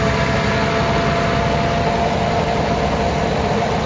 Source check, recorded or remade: recorded